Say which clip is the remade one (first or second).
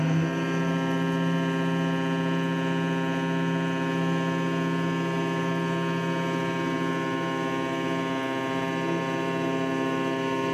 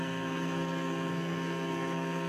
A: second